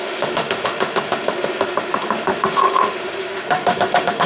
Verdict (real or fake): fake